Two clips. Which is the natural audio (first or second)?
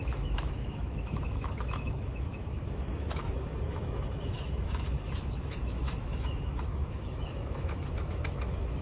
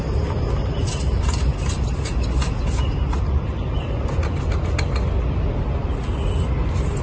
second